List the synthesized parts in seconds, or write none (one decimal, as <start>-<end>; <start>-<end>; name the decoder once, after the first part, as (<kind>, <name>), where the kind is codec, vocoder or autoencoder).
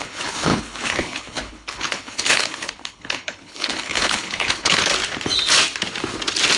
0.0-4.9 (codec, HILCodec)